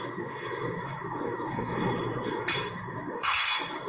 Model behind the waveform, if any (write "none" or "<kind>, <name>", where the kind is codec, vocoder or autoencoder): autoencoder, DAC-VAE